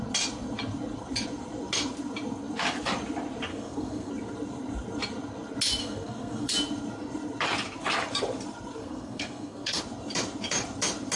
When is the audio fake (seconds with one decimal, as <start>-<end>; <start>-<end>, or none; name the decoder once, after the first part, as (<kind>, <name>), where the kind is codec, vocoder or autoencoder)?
3.5-4.1 (codec, SNAC); 5.8-6.5; 8.8-9.8